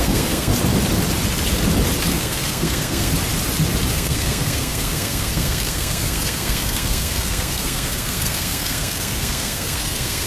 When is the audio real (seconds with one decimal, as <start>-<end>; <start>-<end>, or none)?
0.5-2.1; 3.1-3.9